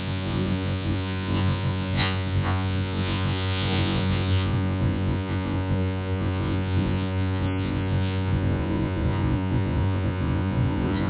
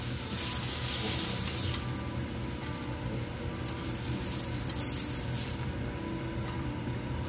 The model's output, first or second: first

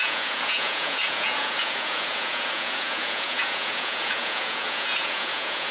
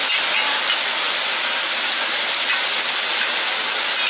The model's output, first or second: first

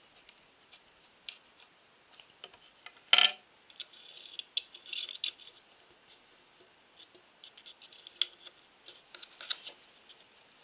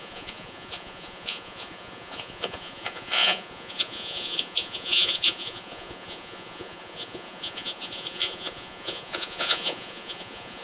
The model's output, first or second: second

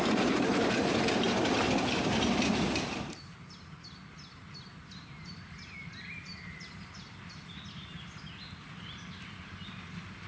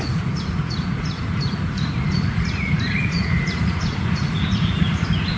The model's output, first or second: second